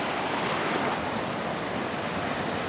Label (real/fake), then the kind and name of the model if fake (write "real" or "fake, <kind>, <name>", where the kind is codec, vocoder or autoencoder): real